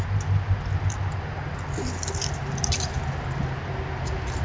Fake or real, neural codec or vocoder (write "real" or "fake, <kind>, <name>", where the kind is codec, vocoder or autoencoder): real